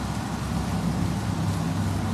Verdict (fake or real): real